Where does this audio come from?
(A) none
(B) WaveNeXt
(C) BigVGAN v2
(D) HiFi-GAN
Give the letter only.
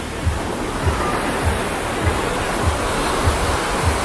A